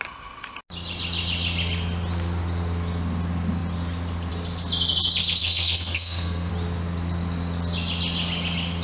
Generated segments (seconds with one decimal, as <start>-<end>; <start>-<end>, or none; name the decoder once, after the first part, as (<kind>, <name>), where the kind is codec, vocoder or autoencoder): 5.4-6.5 (codec, SNAC)